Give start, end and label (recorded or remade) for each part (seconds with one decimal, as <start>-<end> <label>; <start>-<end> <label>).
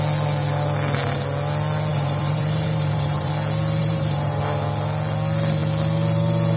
0.0-1.9 recorded; 1.9-3.3 remade; 3.3-3.8 recorded; 3.8-4.4 remade; 4.4-6.6 recorded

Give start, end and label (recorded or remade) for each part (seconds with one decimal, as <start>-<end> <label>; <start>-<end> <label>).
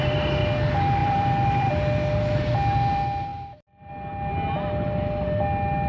0.0-1.0 recorded; 1.0-1.7 remade; 1.7-3.3 recorded; 3.3-3.9 remade; 3.9-5.9 recorded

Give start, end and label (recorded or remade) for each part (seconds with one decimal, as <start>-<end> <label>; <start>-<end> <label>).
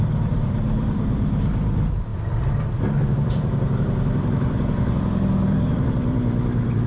0.0-6.9 remade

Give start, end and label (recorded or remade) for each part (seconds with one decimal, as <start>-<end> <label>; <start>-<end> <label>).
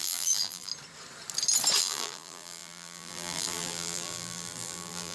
0.0-0.7 remade; 0.7-1.8 recorded; 1.8-5.1 remade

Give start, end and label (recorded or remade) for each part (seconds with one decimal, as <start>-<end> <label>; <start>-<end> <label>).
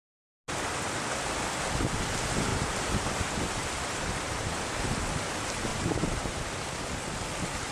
0.0-2.5 recorded; 2.5-5.0 remade; 5.0-5.7 recorded; 5.7-6.8 remade; 6.8-7.7 recorded